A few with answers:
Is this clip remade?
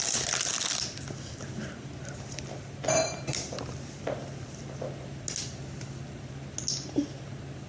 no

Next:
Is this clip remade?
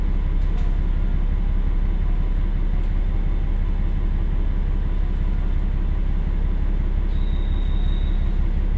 no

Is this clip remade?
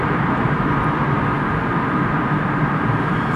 yes